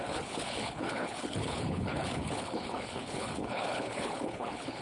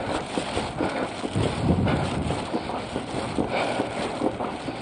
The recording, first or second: second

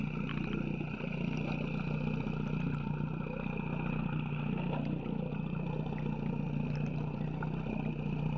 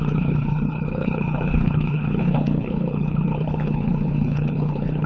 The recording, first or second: first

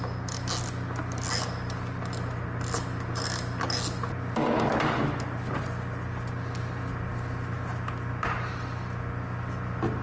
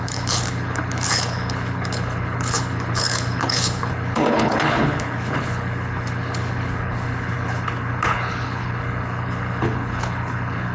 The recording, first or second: first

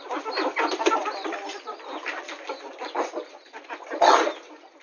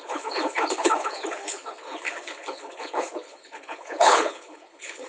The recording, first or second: first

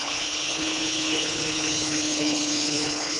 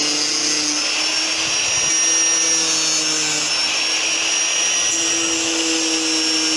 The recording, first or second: second